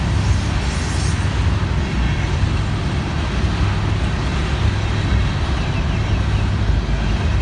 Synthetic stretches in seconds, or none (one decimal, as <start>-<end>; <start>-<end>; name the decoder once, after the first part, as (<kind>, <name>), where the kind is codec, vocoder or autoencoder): none